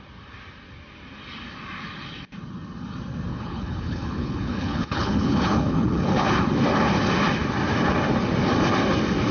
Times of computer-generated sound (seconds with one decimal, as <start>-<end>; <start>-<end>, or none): 3.3-6.3